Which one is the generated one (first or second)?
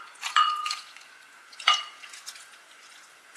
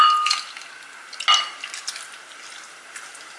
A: first